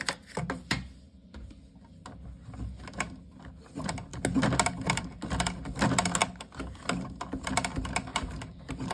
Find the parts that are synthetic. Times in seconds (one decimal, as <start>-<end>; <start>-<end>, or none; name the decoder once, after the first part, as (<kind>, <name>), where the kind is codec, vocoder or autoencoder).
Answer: 8.1-8.9 (vocoder, BigVGAN v2)

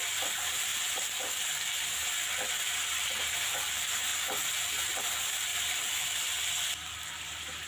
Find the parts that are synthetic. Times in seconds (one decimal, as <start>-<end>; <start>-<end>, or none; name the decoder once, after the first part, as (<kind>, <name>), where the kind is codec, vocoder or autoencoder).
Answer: 0.0-4.1 (vocoder, BigVGAN v2); 5.0-7.7